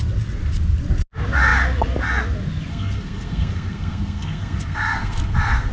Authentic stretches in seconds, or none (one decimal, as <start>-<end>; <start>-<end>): 0.0-2.7